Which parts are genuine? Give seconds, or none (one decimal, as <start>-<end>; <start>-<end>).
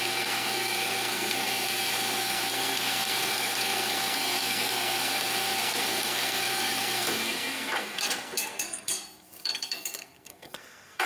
none